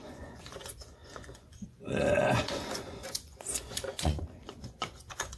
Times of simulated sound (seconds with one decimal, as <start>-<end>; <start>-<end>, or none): 0.0-5.4

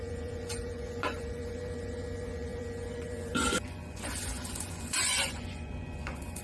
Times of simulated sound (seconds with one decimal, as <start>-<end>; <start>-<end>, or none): 0.0-6.4

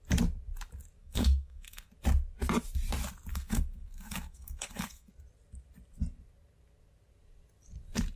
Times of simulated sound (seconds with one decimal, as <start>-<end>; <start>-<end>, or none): 1.0-1.9; 3.3-5.1